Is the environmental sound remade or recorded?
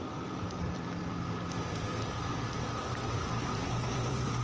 remade